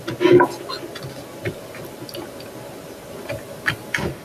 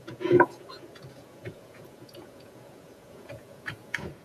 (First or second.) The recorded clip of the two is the first